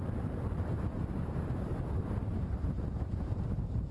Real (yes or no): no